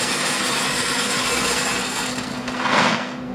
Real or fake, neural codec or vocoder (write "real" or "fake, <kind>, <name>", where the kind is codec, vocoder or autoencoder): fake, codec, SNAC